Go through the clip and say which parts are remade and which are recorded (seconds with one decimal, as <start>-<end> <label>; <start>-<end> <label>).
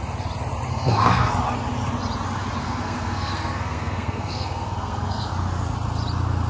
0.0-0.7 recorded; 0.7-1.3 remade; 1.3-2.6 recorded; 2.6-5.3 remade; 5.3-6.5 recorded